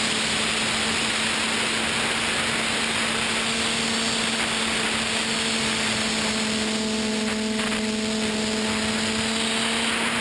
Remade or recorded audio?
recorded